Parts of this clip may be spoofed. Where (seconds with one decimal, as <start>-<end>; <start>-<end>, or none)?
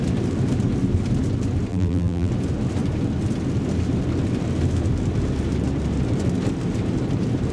1.7-2.3